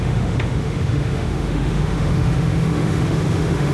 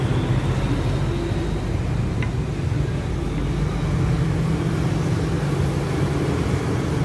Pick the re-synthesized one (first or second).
first